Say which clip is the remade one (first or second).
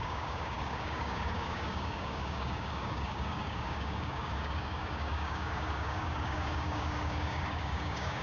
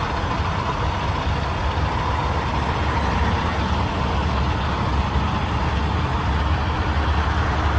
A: first